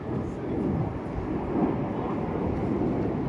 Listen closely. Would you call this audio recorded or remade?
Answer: recorded